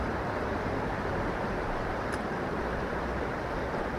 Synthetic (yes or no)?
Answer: yes